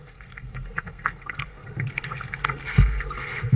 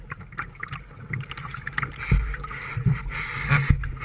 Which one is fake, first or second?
first